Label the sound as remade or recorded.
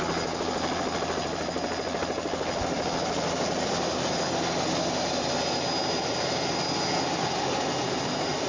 recorded